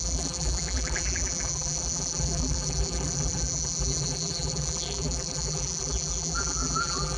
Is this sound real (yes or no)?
no